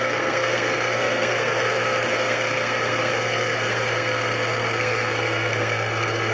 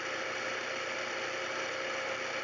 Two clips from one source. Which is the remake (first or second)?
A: first